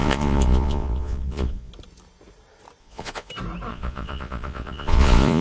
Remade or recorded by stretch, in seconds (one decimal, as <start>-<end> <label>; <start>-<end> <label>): 0.0-1.7 remade; 1.7-2.8 recorded; 2.8-3.3 remade; 3.3-3.7 recorded; 3.7-5.4 remade